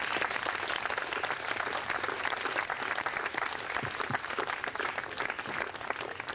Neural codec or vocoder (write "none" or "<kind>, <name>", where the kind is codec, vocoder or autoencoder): none